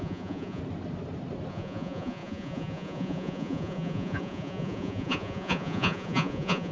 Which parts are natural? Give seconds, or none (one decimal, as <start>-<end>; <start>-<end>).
0.6-1.5